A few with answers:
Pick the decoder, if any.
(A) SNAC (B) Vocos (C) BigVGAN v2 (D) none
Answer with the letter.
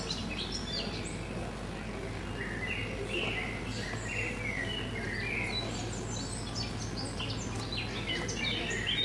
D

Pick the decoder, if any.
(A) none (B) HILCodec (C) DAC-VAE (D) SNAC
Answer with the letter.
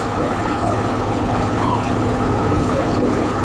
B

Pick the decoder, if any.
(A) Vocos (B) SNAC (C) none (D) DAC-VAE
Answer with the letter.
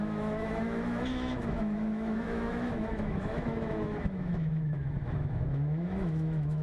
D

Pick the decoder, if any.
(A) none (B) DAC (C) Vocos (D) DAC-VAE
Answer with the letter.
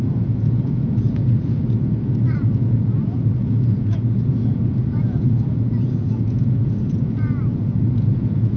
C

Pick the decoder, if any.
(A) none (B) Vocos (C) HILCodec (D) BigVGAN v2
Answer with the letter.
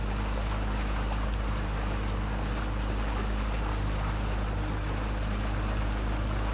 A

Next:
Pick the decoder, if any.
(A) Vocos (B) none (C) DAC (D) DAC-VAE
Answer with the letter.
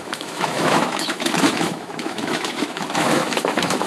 D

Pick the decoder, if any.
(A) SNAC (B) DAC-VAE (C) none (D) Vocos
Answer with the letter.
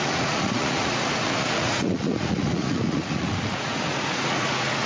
D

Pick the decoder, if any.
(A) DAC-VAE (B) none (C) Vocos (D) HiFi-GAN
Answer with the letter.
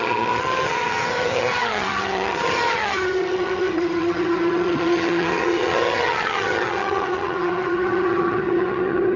D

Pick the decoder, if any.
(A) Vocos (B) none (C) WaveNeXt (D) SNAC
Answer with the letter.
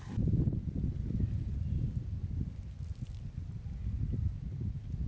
B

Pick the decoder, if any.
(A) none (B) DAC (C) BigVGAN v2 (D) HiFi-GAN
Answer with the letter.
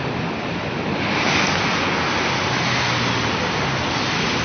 A